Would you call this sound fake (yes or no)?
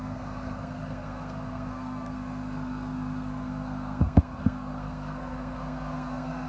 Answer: yes